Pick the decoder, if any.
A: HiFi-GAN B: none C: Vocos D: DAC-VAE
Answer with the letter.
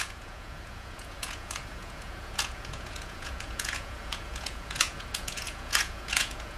C